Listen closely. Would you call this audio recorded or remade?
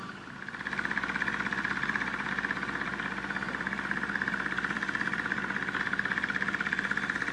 recorded